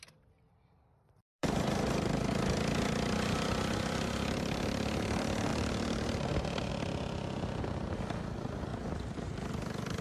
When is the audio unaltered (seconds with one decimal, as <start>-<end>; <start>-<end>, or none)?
0.0-1.2; 2.3-5.5; 6.7-8.7; 9.5-10.0